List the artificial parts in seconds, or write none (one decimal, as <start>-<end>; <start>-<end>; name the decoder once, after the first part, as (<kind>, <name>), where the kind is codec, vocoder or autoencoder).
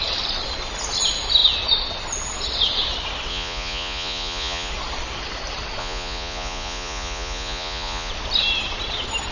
3.3-4.7 (vocoder, Vocos); 5.8-8.1